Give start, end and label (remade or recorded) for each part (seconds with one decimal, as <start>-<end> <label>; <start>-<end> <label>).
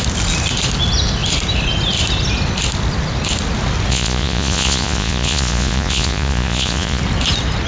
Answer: 0.0-3.9 recorded; 3.9-7.0 remade; 7.0-7.7 recorded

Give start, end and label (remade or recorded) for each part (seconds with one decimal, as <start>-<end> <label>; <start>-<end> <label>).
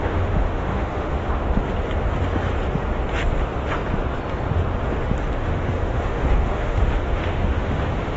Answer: 0.0-1.2 remade; 1.2-5.4 recorded; 5.4-8.2 remade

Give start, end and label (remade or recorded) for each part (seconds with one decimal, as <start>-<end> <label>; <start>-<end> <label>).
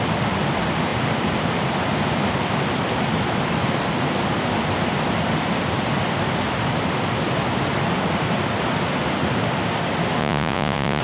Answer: 0.0-10.2 recorded; 10.2-11.0 remade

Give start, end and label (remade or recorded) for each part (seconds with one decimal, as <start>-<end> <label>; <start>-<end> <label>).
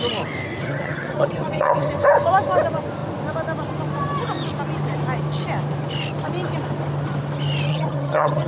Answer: 0.0-0.6 recorded; 0.6-1.9 remade; 1.9-7.7 recorded; 7.7-8.5 remade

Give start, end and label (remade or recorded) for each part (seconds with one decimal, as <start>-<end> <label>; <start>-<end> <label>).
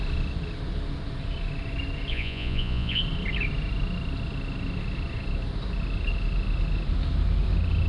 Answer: 0.0-2.1 recorded; 2.1-3.0 remade; 3.0-7.9 recorded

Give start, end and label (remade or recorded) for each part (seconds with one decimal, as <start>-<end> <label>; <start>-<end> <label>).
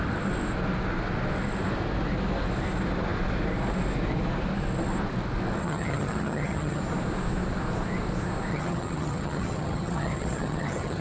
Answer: 0.0-5.6 recorded; 5.6-6.8 remade; 6.8-8.5 recorded; 8.5-11.0 remade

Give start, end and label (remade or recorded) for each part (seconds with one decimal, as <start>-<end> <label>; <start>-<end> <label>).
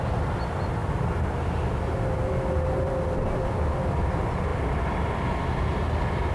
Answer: 0.0-6.3 recorded